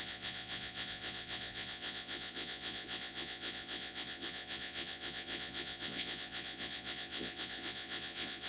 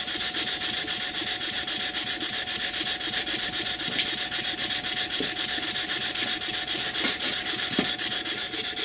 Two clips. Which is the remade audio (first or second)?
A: first